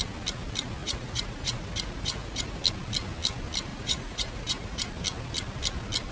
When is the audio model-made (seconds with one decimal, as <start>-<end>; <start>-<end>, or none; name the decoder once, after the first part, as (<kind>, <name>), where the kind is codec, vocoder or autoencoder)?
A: 0.8-2.6 (vocoder, Vocos); 3.7-4.9